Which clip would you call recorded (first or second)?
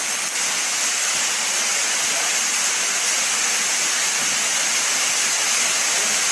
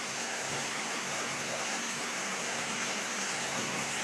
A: first